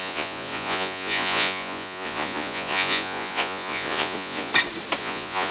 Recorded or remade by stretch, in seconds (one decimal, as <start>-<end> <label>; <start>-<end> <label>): 0.0-4.5 remade; 4.5-5.0 recorded; 5.0-5.5 remade